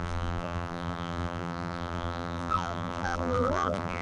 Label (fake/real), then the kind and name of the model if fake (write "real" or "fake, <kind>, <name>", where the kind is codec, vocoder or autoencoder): fake, vocoder, BigVGAN v2